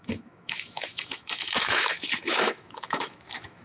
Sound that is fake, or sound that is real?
fake